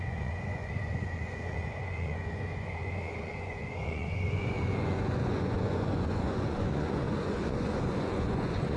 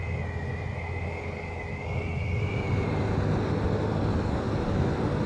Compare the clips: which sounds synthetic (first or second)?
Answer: first